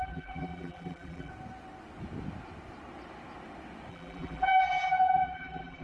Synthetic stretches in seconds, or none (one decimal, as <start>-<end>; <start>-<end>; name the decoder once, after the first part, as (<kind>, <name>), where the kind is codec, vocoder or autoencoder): 0.0-1.3 (vocoder, BigVGAN v2); 3.9-5.8